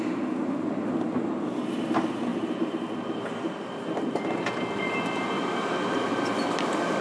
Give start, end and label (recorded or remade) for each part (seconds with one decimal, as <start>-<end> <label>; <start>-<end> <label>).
0.0-7.0 recorded